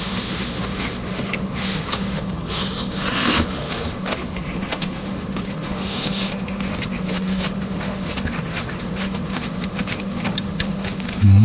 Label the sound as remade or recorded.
remade